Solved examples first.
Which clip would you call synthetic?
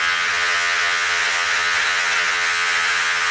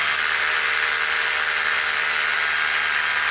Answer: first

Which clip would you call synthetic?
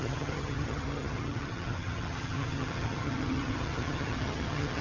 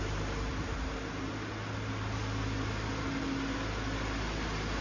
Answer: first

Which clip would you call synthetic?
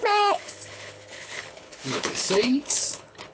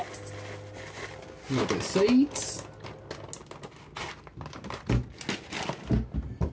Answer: first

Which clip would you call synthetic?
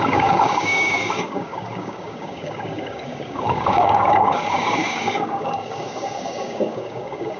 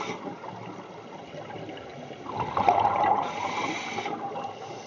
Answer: first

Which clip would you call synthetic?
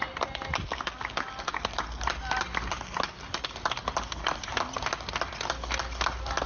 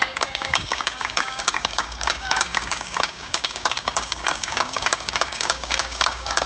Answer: second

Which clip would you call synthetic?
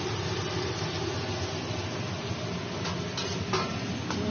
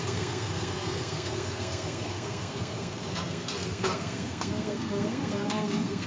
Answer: second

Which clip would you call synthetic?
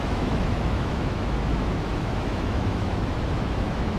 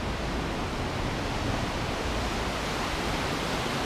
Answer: first